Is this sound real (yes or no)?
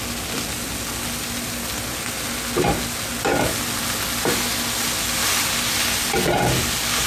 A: yes